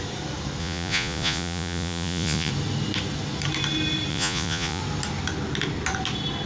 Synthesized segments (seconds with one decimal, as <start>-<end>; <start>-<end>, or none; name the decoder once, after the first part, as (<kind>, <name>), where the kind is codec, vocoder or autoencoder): 0.6-2.5 (vocoder, Vocos); 4.1-4.8